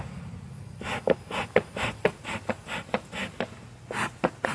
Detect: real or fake real